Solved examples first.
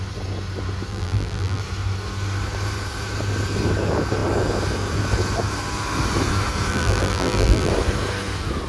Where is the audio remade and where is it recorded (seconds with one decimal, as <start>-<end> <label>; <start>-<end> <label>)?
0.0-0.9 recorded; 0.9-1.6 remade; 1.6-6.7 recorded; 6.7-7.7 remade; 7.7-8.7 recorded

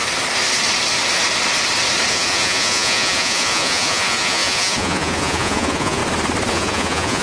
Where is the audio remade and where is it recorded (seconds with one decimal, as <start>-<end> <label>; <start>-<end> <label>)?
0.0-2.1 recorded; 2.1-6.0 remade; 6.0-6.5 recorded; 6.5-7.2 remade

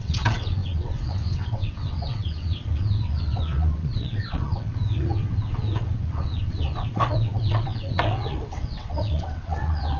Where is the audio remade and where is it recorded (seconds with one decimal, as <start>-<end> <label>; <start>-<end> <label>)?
0.0-10.0 remade